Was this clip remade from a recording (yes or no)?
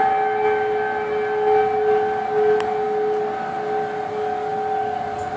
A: no